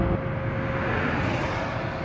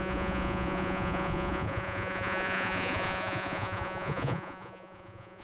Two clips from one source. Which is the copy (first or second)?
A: second